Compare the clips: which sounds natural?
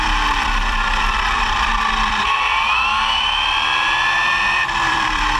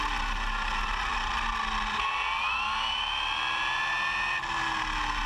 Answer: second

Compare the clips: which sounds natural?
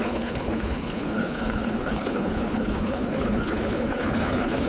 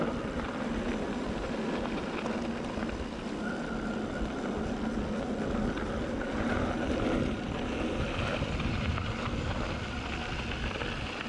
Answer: second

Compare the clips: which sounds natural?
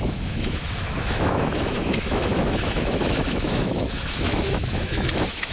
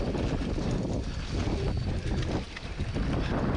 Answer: second